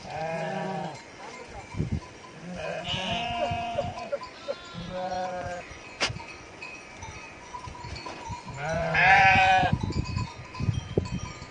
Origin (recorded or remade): remade